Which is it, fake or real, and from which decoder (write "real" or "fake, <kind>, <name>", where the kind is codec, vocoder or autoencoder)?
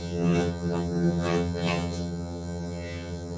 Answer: fake, vocoder, HiFi-GAN